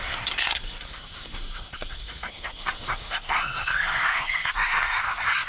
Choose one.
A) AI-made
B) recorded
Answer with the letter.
A